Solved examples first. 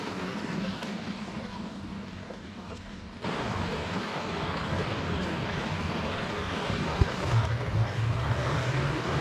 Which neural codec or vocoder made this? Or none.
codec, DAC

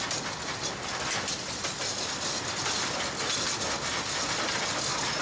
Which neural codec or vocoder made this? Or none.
none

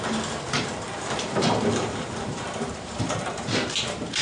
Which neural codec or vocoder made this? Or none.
vocoder, BigVGAN v2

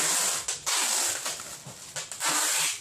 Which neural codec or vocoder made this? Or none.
none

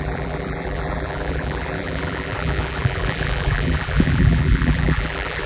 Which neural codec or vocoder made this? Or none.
vocoder, BigVGAN v2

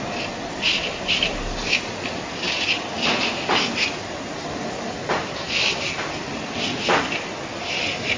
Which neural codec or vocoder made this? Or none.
none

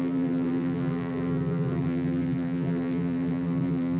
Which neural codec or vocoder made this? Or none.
vocoder, BigVGAN v2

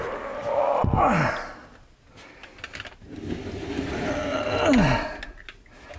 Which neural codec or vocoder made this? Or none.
none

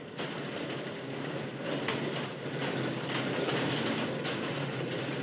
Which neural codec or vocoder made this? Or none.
none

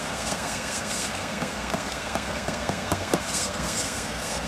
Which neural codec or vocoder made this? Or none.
codec, SNAC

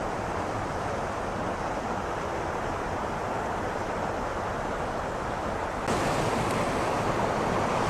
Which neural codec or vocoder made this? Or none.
none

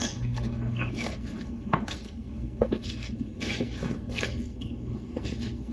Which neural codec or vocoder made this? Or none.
codec, SNAC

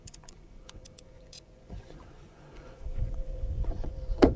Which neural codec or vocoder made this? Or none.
vocoder, Vocos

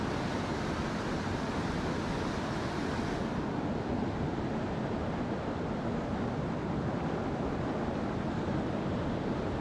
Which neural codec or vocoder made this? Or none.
none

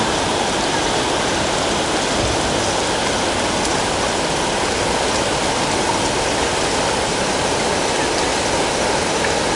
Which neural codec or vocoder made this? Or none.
none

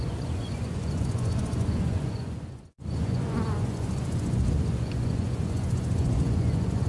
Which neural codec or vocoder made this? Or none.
vocoder, Vocos